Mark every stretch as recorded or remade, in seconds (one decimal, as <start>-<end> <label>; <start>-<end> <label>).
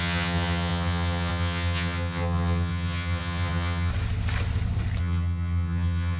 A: 0.0-3.9 remade; 3.9-5.0 recorded; 5.0-6.2 remade